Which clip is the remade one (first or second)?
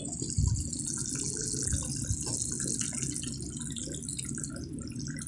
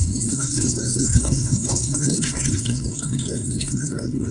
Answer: second